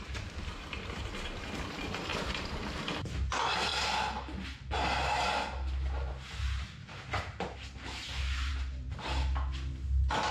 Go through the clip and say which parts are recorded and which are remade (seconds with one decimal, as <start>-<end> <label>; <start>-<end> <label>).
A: 0.0-2.1 recorded; 2.1-3.1 remade; 3.1-8.5 recorded; 8.5-9.7 remade; 9.7-10.3 recorded